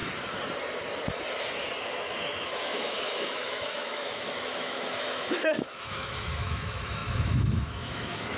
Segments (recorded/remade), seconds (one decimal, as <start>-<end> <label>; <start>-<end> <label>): 0.0-1.8 recorded; 1.8-8.4 remade